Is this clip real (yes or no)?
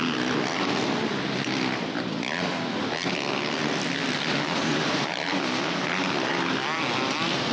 yes